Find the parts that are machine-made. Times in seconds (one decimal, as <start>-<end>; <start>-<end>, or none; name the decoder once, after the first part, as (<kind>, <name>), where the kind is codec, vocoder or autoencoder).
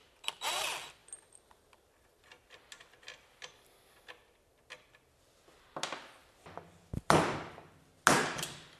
none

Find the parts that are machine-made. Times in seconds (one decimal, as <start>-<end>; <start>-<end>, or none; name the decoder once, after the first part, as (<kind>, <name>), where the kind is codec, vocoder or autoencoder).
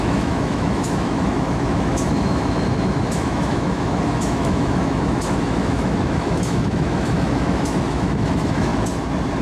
0.0-8.7 (autoencoder, DAC-VAE)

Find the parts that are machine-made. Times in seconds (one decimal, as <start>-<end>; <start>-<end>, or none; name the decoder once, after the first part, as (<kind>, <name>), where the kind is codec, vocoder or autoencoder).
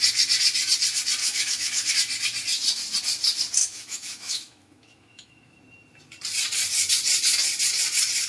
1.2-1.9 (autoencoder, DAC-VAE); 3.6-5.6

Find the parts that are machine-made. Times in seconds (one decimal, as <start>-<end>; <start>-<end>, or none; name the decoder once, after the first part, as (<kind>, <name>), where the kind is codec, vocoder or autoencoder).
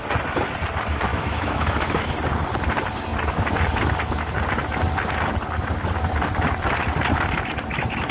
1.1-2.1 (autoencoder, DAC-VAE)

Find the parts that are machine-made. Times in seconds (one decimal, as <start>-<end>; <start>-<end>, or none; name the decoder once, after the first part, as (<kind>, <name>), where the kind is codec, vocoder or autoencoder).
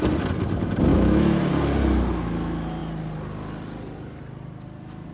0.9-1.5 (autoencoder, DAC-VAE)